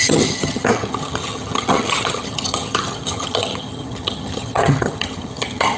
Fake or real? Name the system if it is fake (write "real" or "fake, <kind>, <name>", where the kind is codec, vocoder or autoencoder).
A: fake, vocoder, HiFi-GAN